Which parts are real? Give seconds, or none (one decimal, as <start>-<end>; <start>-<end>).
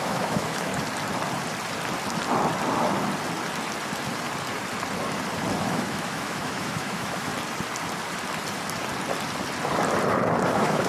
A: 0.7-5.6; 7.3-10.5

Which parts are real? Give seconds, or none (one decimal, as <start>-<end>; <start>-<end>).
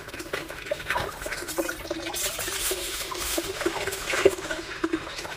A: 1.5-2.6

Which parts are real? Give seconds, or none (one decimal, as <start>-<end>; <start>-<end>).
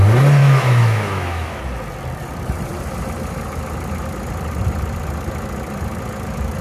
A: 0.0-0.4; 1.6-6.6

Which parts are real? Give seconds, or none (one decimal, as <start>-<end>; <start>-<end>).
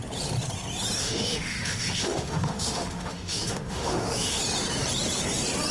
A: 0.0-1.0; 4.4-5.7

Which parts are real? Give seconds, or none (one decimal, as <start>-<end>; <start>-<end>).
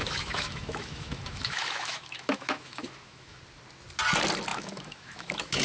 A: 3.4-4.5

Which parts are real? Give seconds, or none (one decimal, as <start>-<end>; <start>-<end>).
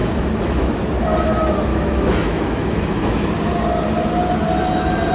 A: 0.8-1.7; 3.3-5.1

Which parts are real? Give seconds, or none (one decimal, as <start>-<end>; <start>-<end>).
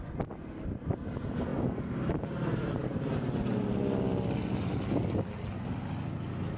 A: 0.0-6.6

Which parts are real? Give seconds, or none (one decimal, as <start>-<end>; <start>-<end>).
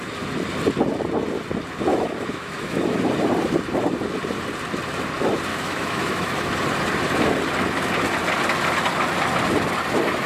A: 0.0-1.9; 3.1-5.5; 6.5-10.3